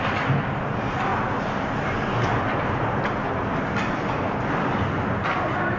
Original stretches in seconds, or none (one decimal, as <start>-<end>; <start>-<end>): 0.0-5.8